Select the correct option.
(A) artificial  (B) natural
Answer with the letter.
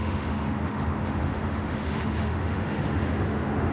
A